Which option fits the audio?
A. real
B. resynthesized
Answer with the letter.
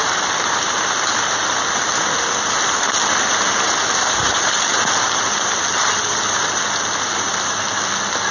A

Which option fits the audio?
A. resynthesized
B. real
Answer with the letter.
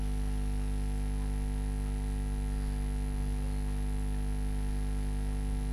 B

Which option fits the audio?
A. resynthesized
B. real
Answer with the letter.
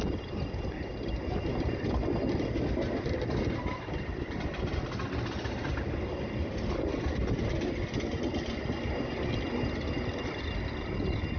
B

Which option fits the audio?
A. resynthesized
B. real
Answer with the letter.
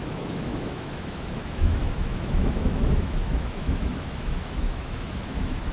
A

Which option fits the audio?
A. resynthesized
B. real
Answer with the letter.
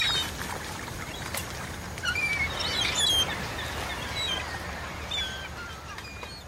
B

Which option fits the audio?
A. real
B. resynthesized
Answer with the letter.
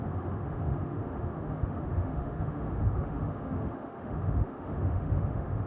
B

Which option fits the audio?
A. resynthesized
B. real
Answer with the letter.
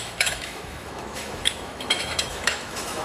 A